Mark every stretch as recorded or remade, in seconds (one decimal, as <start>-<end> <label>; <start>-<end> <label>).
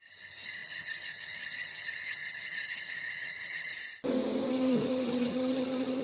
0.0-3.7 remade; 3.7-4.5 recorded; 4.5-6.0 remade